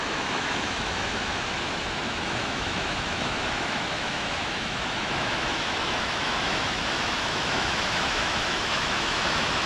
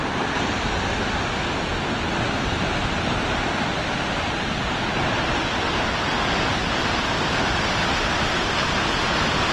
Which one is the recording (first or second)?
second